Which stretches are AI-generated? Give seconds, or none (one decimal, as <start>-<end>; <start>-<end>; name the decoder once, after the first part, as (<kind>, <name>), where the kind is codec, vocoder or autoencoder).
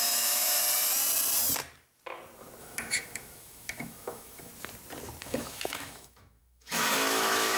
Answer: 0.0-0.6 (autoencoder, DAC-VAE); 2.6-4.5; 5.2-7.6